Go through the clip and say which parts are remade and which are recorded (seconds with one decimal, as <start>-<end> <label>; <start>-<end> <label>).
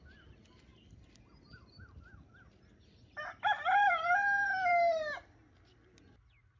0.0-0.7 recorded; 0.7-4.7 remade; 4.7-6.6 recorded